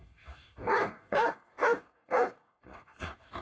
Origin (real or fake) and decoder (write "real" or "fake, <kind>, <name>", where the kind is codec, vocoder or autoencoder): fake, codec, DAC